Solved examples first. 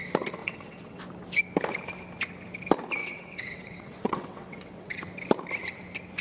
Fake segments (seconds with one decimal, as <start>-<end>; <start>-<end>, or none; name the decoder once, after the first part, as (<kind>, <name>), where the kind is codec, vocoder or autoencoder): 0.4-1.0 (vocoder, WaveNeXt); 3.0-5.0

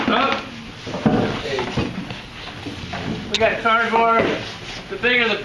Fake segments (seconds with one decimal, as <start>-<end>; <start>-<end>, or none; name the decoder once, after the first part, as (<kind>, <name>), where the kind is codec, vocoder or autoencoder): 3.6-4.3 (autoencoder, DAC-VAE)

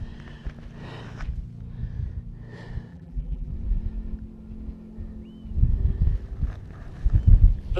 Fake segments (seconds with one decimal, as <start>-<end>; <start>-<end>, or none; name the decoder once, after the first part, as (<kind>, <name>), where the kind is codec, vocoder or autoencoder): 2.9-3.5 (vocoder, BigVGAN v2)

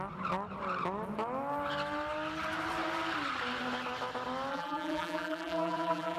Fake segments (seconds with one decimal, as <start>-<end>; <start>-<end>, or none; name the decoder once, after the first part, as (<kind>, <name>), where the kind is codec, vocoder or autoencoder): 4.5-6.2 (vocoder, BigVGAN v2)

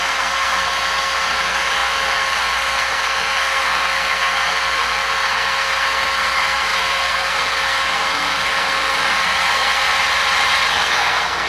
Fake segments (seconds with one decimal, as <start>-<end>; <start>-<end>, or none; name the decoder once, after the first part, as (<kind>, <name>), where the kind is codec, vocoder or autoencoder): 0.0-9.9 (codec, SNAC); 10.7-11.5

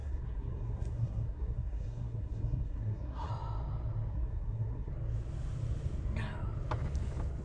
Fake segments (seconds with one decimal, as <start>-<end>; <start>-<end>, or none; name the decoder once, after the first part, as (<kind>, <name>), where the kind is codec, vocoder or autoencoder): 0.0-3.3 (codec, SNAC); 4.1-4.9

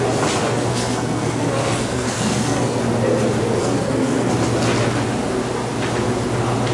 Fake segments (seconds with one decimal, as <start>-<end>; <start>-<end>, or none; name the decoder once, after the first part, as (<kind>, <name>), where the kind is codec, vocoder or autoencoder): 0.4-2.8 (codec, SNAC); 3.6-4.3

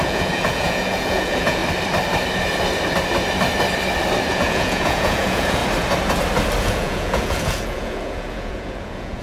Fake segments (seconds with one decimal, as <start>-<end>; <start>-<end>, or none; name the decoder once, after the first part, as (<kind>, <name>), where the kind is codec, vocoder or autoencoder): 0.0-1.6 (vocoder, Vocos); 4.3-5.6; 6.6-9.2